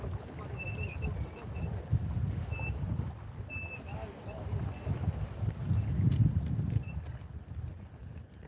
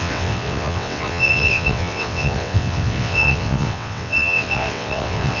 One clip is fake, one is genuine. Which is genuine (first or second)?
first